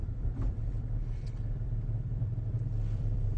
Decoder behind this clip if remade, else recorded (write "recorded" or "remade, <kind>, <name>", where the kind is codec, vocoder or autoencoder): remade, vocoder, BigVGAN v2